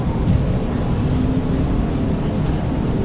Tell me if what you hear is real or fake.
real